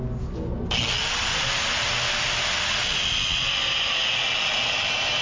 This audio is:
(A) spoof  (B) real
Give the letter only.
B